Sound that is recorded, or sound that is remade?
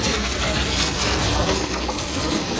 remade